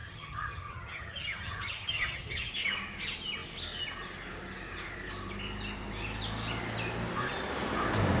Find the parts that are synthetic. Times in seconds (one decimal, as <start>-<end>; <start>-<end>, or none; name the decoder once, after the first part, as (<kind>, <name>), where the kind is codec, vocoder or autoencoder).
0.0-2.5 (vocoder, HiFi-GAN)